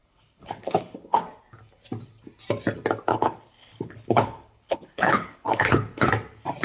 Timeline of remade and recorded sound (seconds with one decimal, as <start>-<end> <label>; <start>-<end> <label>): 0.0-1.2 remade; 1.2-3.1 recorded; 3.1-6.1 remade; 6.1-6.6 recorded